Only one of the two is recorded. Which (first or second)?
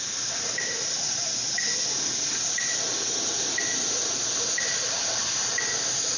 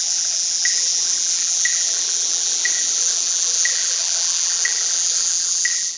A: first